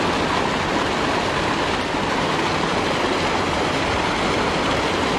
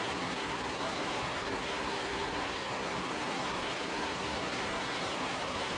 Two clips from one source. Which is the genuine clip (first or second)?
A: first